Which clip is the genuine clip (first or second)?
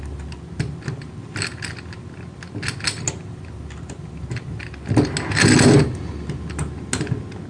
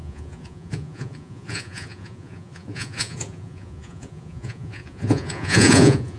first